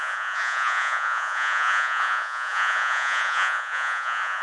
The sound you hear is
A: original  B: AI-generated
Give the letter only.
B